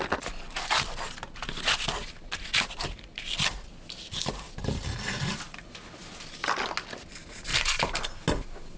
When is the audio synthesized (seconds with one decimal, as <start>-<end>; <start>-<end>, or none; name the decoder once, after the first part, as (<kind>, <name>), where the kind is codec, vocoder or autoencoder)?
none